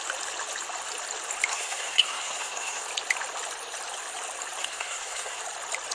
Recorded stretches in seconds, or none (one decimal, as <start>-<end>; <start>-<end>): 0.0-1.5; 2.8-4.6; 5.4-5.9